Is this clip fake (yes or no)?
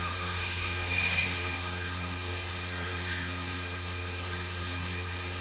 yes